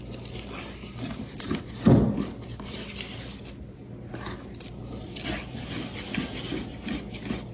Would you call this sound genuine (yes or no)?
yes